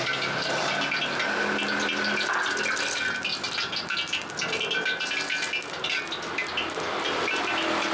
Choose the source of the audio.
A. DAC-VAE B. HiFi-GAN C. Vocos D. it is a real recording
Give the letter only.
D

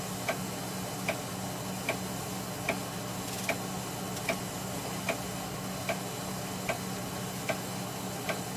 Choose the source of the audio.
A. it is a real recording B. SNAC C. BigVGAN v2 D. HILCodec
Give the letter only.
A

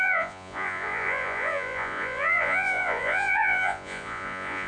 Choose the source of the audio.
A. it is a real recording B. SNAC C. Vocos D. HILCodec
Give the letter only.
C